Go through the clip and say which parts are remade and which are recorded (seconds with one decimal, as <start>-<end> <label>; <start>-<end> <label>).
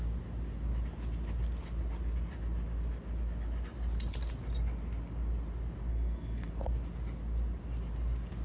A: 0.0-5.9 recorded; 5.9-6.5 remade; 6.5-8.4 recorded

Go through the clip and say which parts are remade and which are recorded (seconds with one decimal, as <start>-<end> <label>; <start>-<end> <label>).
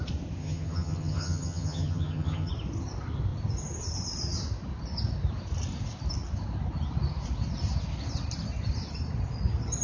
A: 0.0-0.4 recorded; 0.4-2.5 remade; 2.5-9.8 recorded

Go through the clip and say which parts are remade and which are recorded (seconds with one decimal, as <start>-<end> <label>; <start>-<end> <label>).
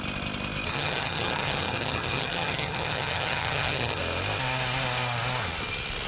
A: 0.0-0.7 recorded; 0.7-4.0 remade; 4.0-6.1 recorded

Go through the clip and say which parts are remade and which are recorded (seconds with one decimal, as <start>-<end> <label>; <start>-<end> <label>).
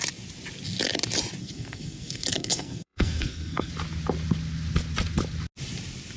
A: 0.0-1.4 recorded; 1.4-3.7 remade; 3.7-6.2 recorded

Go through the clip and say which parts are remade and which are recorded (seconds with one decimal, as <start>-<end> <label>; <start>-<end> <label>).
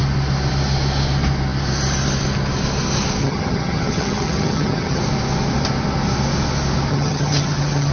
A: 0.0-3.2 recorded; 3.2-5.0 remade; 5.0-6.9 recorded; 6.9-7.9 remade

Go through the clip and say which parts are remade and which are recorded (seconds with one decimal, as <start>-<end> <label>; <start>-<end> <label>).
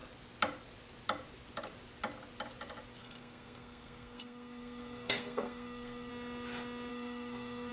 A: 0.0-3.0 recorded; 3.0-6.1 remade; 6.1-6.9 recorded; 6.9-7.7 remade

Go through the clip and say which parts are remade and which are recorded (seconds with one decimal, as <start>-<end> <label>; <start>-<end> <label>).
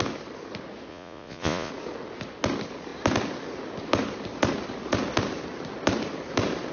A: 0.0-0.9 recorded; 0.9-1.7 remade; 1.7-6.7 recorded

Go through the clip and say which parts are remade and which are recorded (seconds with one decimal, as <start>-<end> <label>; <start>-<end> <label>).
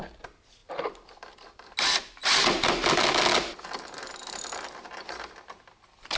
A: 0.0-6.2 recorded